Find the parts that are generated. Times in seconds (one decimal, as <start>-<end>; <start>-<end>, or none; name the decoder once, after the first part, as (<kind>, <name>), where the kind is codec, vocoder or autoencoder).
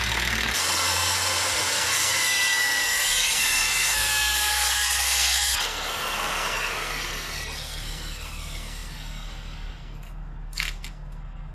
0.0-11.5 (codec, SNAC)